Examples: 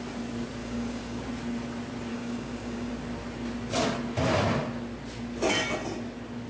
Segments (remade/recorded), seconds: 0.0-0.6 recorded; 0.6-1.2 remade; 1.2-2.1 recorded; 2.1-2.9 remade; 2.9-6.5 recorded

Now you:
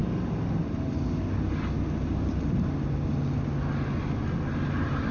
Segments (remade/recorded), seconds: 0.0-5.1 recorded

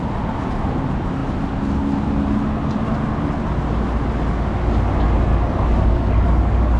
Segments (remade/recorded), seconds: 0.0-5.3 recorded; 5.3-6.8 remade

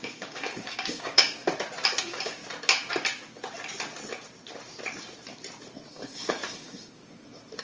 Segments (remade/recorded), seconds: 0.0-1.4 remade; 1.4-2.0 recorded; 2.0-2.4 remade; 2.4-5.9 recorded; 5.9-7.0 remade; 7.0-7.6 recorded

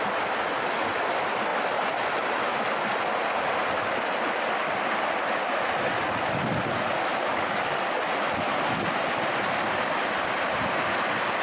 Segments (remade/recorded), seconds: 0.0-7.3 recorded; 7.3-8.0 remade; 8.0-11.4 recorded

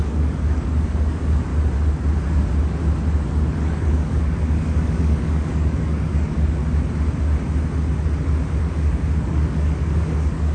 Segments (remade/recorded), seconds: 0.0-1.5 remade; 1.5-3.5 recorded; 3.5-6.6 remade; 6.6-8.6 recorded; 8.6-10.5 remade

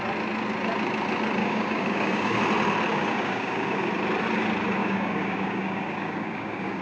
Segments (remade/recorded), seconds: 0.0-1.4 recorded; 1.4-2.4 remade; 2.4-2.9 recorded; 2.9-3.9 remade; 3.9-4.8 recorded; 4.8-6.8 remade